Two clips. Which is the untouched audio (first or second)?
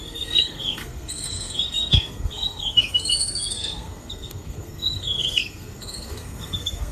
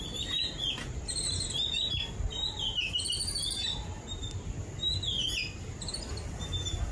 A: second